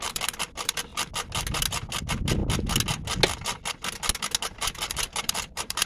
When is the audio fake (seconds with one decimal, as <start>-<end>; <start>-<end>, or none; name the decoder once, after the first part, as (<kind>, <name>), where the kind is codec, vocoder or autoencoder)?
0.0-0.9 (vocoder, BigVGAN v2); 2.0-2.4; 4.9-5.9